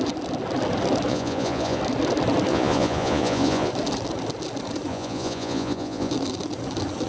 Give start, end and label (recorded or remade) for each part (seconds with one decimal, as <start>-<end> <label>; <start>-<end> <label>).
0.0-1.1 recorded; 1.1-1.8 remade; 1.8-2.5 recorded; 2.5-3.7 remade; 3.7-4.9 recorded; 4.9-6.1 remade; 6.1-7.1 recorded

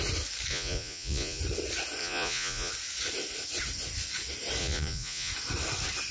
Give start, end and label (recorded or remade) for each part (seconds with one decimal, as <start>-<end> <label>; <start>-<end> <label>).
0.0-0.5 recorded; 0.5-1.4 remade; 1.4-2.0 recorded; 2.0-2.7 remade; 2.7-4.6 recorded; 4.6-5.3 remade; 5.3-6.1 recorded

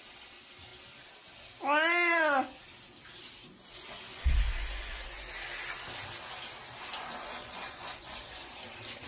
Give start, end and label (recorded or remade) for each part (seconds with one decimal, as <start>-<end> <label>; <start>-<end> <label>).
0.0-4.1 recorded; 4.1-5.3 remade; 5.3-6.9 recorded; 6.9-8.5 remade; 8.5-9.1 recorded

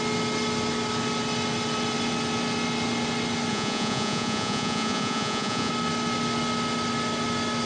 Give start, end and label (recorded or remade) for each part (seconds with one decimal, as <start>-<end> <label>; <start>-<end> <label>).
0.0-3.5 recorded; 3.5-5.7 remade; 5.7-7.7 recorded